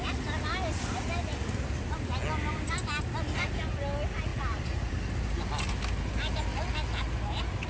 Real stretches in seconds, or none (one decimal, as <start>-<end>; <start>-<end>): 0.0-7.7